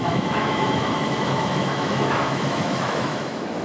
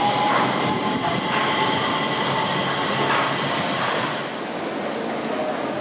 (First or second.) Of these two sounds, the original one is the second